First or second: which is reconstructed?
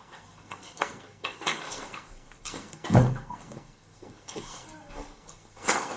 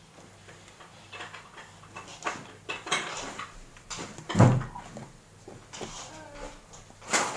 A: first